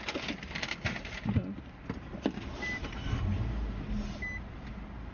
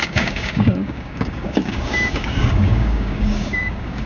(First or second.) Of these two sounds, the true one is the first